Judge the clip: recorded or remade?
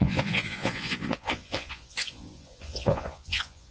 remade